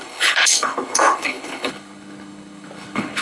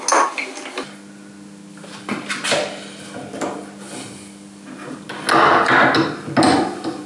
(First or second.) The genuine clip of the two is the second